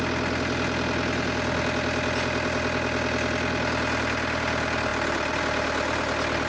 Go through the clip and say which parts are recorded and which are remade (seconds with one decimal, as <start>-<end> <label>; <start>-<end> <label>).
0.0-6.5 recorded